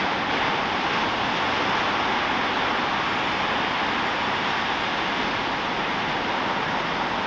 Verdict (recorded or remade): recorded